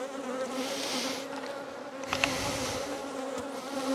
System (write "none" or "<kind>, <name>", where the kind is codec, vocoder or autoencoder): none